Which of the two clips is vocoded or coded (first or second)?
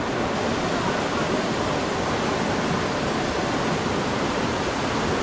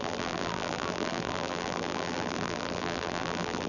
second